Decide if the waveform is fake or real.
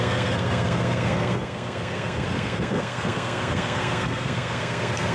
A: fake